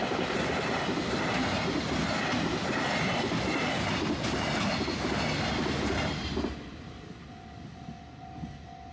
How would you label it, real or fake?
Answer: real